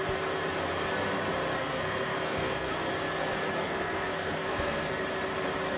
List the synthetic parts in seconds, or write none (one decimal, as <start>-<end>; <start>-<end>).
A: 1.6-2.7; 3.6-4.9